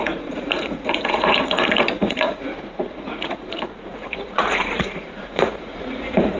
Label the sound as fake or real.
fake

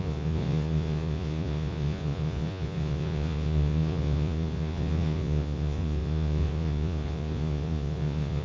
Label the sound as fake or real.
fake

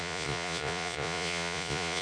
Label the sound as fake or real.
fake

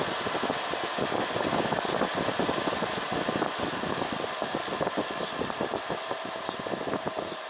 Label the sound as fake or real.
real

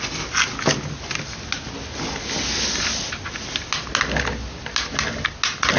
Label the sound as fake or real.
real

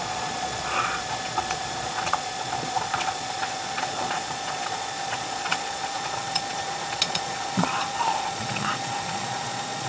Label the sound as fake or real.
fake